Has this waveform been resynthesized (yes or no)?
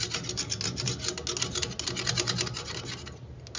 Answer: no